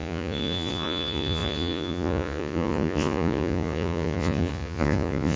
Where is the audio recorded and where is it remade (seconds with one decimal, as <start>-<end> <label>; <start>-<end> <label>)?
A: 0.0-5.4 remade